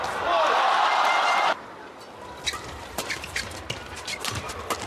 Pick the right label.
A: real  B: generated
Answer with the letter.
B